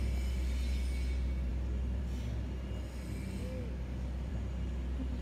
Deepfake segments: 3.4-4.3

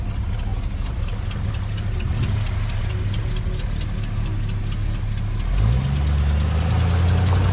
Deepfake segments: none

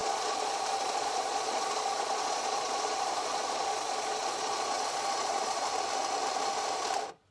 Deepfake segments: 0.0-5.7